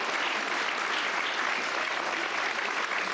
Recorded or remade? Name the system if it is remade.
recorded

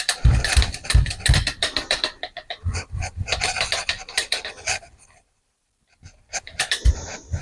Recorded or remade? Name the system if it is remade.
remade, vocoder, BigVGAN v2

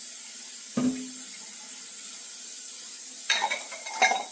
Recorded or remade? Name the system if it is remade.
recorded